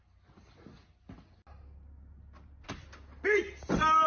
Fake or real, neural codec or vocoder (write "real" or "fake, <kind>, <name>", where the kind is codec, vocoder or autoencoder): real